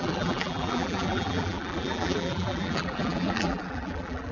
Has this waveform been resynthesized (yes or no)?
yes